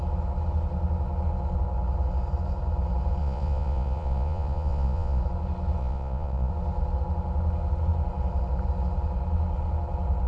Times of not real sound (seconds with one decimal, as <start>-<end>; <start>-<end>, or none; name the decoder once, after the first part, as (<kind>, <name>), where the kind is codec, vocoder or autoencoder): 3.2-5.2 (vocoder, Vocos); 5.8-6.5